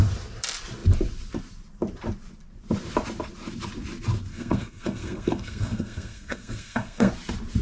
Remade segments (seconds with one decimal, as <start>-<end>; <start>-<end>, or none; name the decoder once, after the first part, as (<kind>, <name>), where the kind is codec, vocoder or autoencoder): 4.3-7.1 (codec, SNAC)